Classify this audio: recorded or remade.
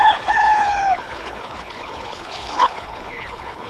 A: remade